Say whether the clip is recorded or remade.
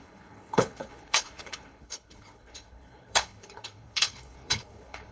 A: remade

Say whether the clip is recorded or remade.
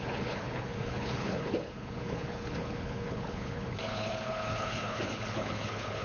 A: remade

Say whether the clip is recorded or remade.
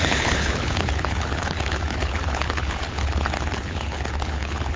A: remade